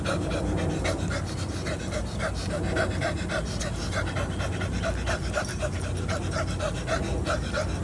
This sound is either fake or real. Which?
real